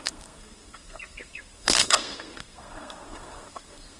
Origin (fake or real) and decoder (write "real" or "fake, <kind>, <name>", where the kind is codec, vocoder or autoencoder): fake, codec, SNAC